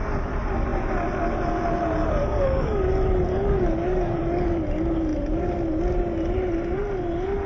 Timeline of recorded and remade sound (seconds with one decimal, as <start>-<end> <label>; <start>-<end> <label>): 0.0-2.2 recorded; 2.2-2.9 remade; 2.9-3.3 recorded; 3.3-4.6 remade; 4.6-7.5 recorded